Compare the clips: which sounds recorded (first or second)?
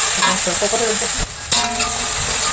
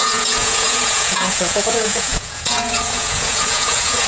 first